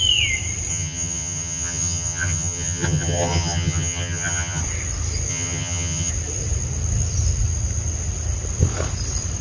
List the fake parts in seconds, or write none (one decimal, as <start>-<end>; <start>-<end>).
0.7-4.6; 5.3-6.1